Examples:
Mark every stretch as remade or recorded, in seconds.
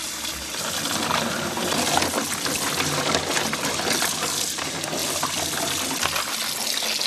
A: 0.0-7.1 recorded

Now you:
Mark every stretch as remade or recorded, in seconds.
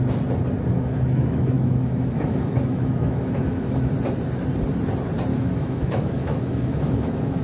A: 0.0-0.7 recorded; 0.7-3.9 remade; 3.9-5.3 recorded; 5.3-7.4 remade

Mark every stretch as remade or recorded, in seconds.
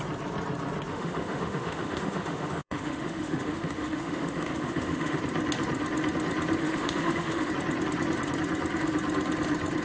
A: 0.0-0.9 recorded; 0.9-5.2 remade; 5.2-6.6 recorded; 6.6-7.5 remade; 7.5-9.8 recorded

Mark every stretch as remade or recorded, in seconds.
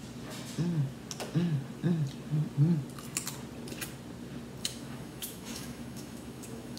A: 0.0-4.6 recorded; 4.6-6.8 remade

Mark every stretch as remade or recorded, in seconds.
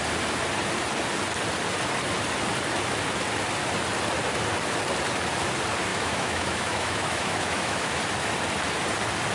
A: 0.0-5.9 recorded; 5.9-8.0 remade; 8.0-9.3 recorded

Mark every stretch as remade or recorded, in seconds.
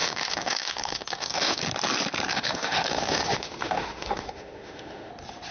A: 0.0-1.6 remade; 1.6-2.3 recorded; 2.3-5.1 remade; 5.1-5.5 recorded